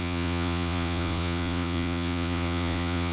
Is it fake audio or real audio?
fake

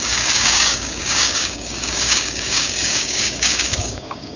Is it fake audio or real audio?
fake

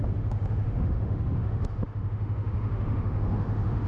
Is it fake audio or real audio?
fake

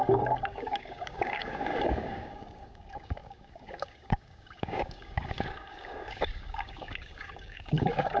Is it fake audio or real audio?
fake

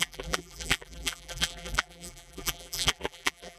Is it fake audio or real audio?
fake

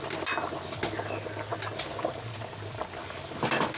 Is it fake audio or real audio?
real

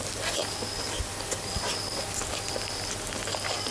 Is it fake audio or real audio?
real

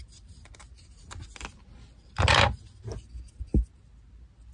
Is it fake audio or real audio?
real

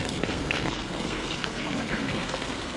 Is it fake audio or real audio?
fake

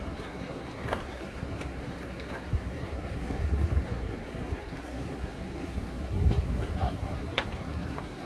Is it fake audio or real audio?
fake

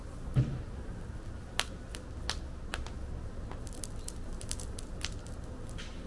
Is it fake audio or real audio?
real